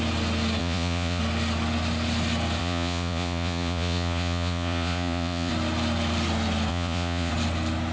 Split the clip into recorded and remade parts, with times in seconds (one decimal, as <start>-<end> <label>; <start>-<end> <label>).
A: 0.0-0.6 recorded; 0.6-1.2 remade; 1.2-2.6 recorded; 2.6-5.5 remade; 5.5-6.7 recorded; 6.7-7.3 remade; 7.3-7.9 recorded